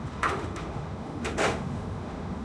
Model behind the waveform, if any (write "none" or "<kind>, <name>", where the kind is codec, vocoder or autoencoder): autoencoder, DAC-VAE